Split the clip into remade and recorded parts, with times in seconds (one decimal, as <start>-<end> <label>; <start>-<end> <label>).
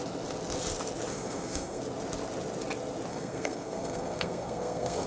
0.0-1.1 recorded; 1.1-1.8 remade; 1.8-3.1 recorded; 3.1-5.1 remade